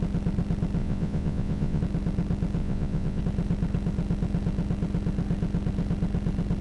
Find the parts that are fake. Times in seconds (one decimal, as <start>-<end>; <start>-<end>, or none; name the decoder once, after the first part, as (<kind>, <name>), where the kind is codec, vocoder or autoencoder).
0.8-1.8 (vocoder, Vocos); 2.6-3.2